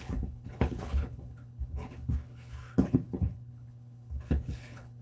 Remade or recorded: remade